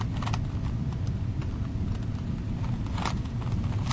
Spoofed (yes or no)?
no